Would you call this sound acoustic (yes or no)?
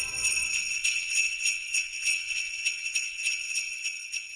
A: no